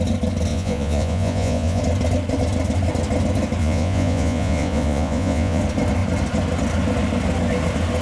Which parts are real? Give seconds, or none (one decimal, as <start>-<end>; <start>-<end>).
0.0-0.5; 1.8-3.6; 5.6-8.0